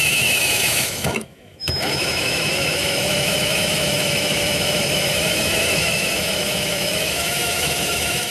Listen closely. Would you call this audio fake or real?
fake